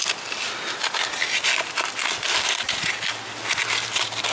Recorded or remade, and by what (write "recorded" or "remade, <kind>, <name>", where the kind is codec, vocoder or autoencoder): recorded